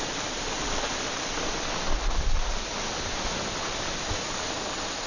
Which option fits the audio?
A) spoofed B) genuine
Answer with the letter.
B